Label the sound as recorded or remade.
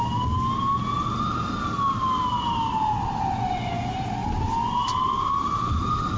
recorded